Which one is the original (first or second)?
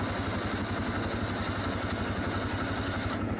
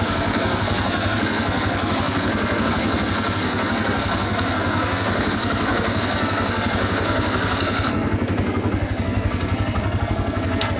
first